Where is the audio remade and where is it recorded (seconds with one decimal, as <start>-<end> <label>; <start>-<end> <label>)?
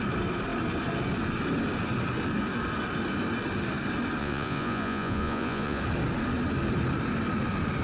0.0-4.2 recorded; 4.2-5.8 remade; 5.8-7.8 recorded